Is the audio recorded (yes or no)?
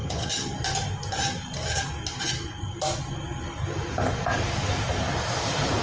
yes